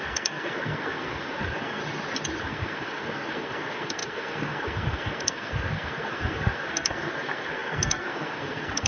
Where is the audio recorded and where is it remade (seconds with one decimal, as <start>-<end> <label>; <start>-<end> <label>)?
0.0-1.8 remade; 1.8-2.4 recorded; 2.4-8.9 remade